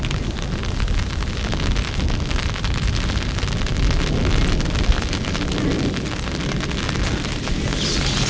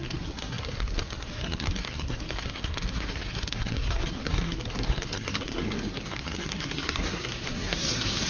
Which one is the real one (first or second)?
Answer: first